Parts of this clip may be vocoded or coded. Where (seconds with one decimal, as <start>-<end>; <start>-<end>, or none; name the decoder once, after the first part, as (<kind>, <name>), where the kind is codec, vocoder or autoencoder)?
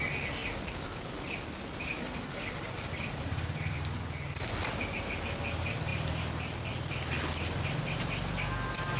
none